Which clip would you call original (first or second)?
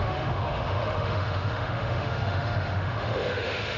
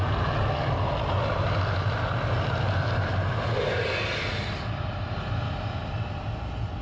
second